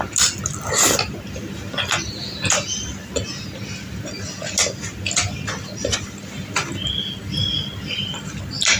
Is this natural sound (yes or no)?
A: yes